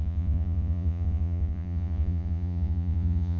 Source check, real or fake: fake